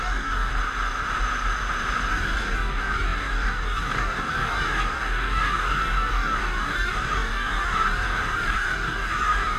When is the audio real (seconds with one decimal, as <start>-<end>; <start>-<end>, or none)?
0.5-2.1

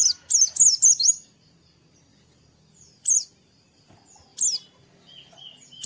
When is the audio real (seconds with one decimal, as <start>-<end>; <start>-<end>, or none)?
0.0-2.1; 3.9-5.9

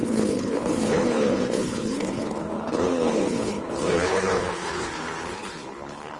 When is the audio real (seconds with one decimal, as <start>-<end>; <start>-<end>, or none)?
none

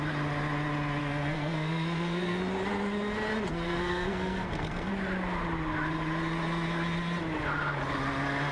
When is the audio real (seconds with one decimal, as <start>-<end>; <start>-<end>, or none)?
0.0-1.0; 2.4-3.5; 4.9-8.5

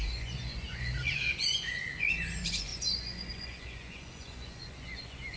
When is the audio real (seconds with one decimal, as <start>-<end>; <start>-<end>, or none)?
none

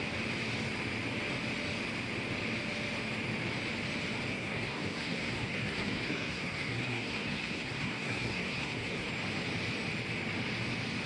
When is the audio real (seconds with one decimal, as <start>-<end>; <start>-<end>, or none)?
0.0-4.3; 9.1-11.1

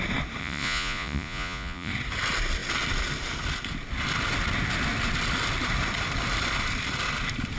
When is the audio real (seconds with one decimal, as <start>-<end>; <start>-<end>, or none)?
0.0-0.4; 1.9-7.6

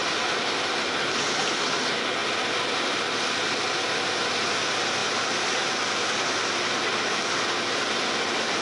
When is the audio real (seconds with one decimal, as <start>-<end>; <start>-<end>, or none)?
0.0-8.6